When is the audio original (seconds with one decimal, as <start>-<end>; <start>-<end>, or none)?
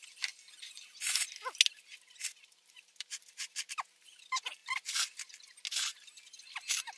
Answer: 0.0-2.3; 3.5-7.0